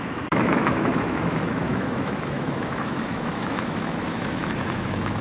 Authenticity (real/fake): fake